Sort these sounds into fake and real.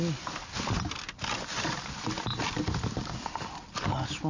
real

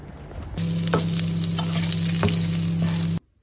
real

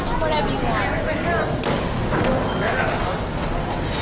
real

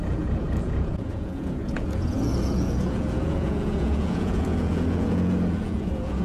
fake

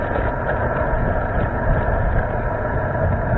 fake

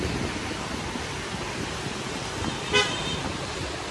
real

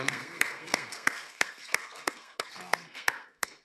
fake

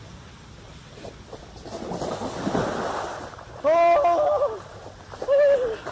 real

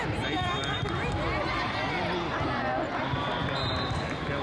real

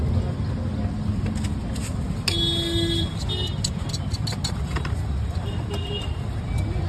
real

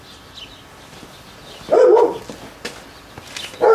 real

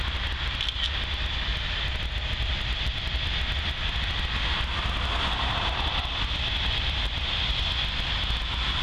real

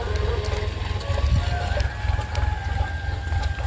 real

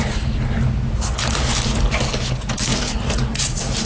real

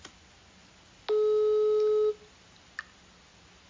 real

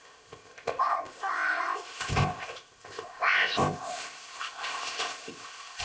fake